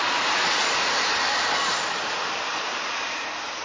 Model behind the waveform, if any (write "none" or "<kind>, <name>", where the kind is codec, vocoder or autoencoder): vocoder, BigVGAN v2